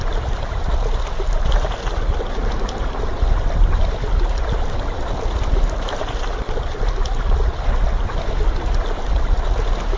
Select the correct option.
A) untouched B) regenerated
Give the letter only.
A